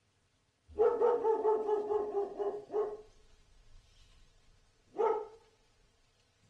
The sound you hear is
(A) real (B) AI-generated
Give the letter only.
A